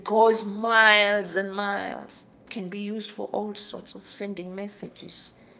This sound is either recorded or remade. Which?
remade